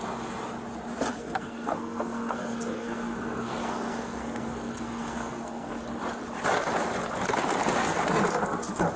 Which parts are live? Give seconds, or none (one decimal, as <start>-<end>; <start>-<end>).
0.0-1.1; 5.8-9.0